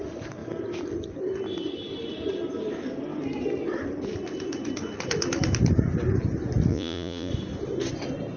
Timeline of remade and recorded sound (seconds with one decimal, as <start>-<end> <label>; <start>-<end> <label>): 0.0-6.7 recorded; 6.7-7.3 remade; 7.3-8.4 recorded